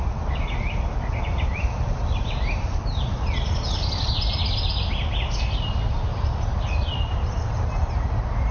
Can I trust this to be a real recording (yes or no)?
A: yes